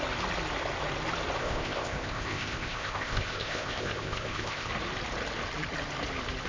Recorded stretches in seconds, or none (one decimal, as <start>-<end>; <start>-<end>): 0.0-1.4; 4.7-6.5